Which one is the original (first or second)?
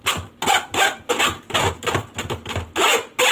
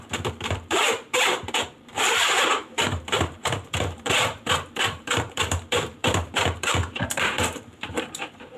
first